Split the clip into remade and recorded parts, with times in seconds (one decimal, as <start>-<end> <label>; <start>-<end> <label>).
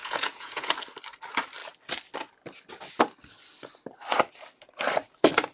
0.0-0.7 remade; 0.7-5.5 recorded